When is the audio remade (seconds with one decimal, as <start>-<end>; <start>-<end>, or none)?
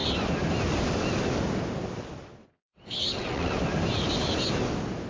2.4-3.5